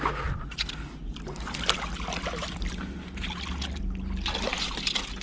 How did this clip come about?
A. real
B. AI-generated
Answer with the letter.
A